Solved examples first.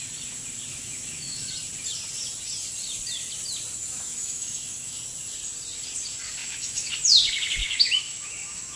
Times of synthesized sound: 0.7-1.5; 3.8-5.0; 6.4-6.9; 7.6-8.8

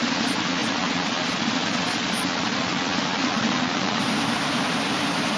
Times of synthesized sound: 0.0-4.0